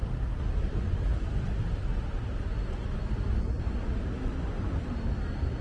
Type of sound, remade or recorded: recorded